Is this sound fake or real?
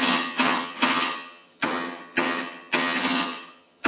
fake